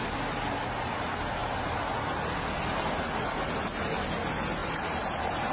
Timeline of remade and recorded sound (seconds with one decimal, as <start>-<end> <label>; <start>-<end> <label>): 0.0-4.6 recorded; 4.6-5.5 remade